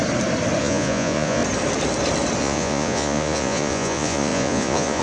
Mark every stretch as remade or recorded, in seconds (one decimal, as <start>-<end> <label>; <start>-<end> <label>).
0.0-0.6 recorded; 0.6-1.4 remade; 1.4-2.4 recorded; 2.4-5.0 remade

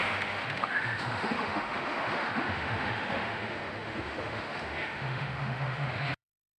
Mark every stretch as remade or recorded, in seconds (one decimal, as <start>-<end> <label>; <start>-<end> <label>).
0.0-6.6 remade

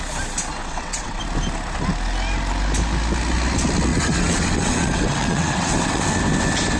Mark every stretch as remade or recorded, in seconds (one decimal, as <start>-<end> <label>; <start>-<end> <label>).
0.0-0.6 recorded; 0.6-1.2 remade; 1.2-3.9 recorded; 3.9-6.0 remade; 6.0-6.8 recorded

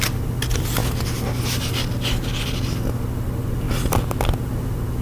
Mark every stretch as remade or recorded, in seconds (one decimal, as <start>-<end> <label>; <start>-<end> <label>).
0.0-5.0 recorded